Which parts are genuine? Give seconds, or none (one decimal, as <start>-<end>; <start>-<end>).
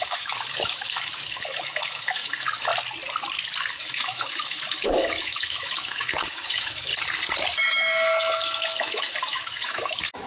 2.7-3.7; 6.9-7.6